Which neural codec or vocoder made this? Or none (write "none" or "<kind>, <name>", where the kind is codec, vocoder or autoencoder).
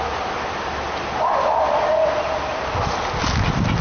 none